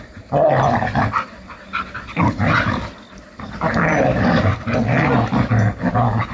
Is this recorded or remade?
recorded